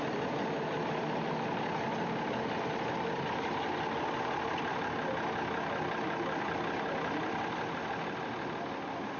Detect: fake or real real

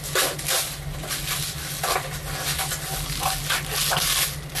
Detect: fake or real real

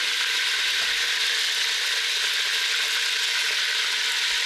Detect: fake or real real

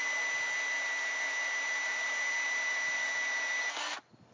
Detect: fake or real real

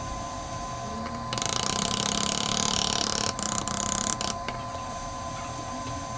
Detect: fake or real real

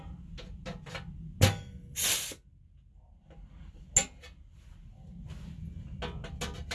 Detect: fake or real real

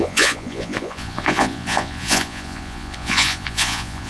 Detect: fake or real fake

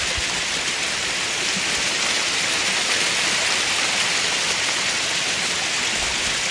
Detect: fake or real real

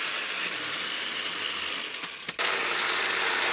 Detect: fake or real real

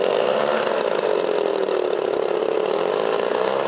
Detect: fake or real real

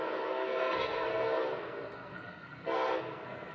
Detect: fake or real fake